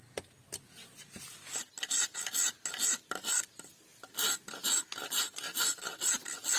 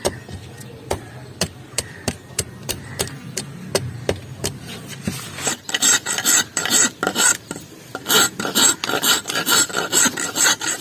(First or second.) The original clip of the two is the first